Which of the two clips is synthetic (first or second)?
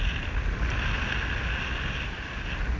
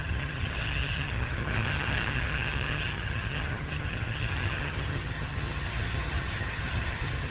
second